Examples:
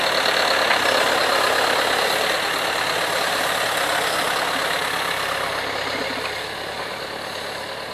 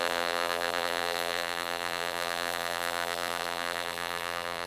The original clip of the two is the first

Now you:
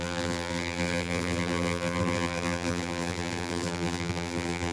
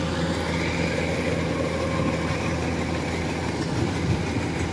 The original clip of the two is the second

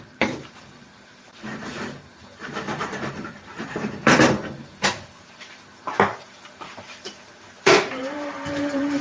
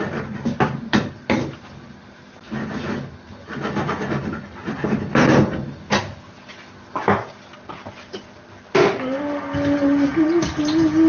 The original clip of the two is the second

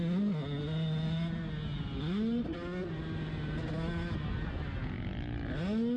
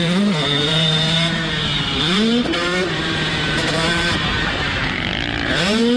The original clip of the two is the first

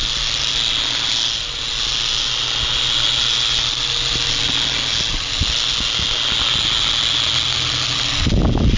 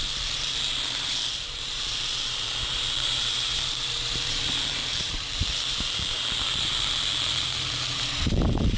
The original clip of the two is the first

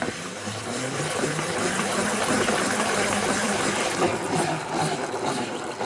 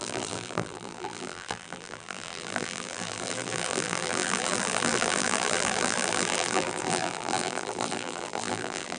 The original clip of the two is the first